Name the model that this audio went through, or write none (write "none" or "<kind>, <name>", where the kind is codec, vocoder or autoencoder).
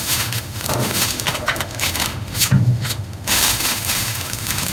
autoencoder, DAC-VAE